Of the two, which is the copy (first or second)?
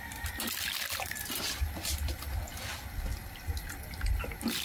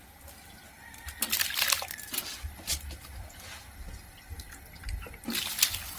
first